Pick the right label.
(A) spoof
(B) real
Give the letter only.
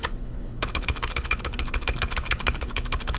A